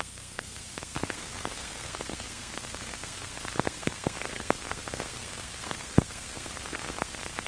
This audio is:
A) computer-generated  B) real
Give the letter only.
A